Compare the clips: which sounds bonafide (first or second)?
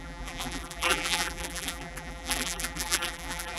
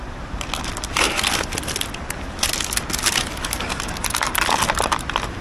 second